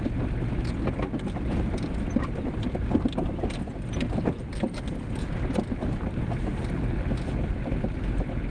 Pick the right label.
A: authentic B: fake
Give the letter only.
A